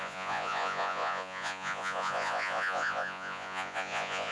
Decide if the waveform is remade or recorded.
remade